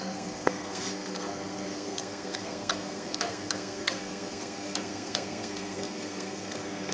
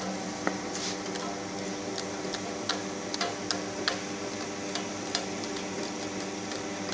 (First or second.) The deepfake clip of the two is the first